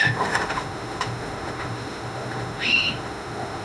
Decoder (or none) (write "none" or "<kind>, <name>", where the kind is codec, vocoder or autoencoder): autoencoder, DAC-VAE